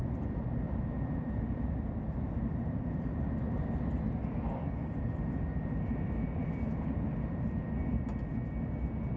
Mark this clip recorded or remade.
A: recorded